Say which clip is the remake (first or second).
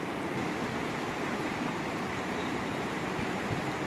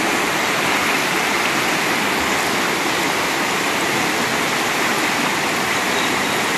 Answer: first